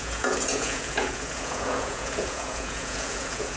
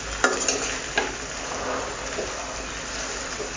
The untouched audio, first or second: second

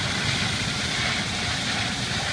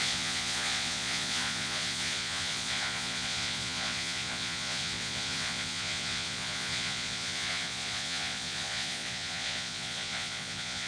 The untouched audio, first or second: first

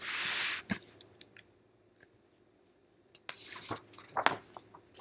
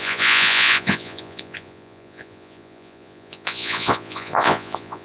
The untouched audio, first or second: first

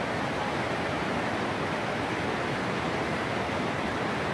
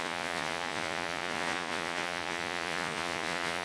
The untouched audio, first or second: first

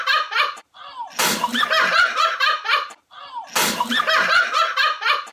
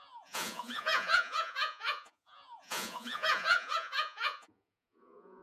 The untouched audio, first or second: first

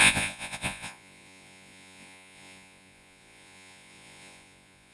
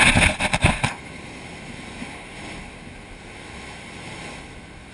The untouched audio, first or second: second